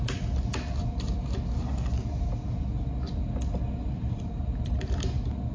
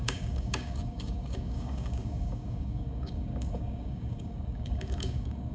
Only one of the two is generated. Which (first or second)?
second